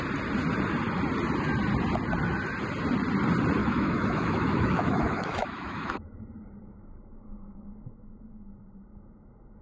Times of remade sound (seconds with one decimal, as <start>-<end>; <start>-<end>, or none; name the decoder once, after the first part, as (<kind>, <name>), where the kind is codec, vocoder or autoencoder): 3.6-6.2 (autoencoder, DAC-VAE)